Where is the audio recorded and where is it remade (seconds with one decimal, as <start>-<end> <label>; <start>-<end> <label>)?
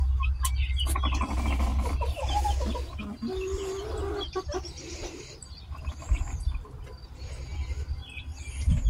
0.0-8.9 recorded